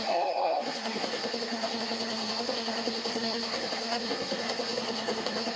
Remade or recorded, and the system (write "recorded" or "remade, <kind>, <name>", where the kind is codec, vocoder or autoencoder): remade, codec, SNAC